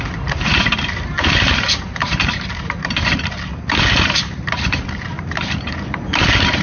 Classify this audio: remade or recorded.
remade